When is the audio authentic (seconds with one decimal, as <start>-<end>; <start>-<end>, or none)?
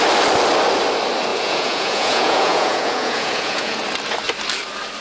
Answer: 0.0-1.3; 3.8-5.0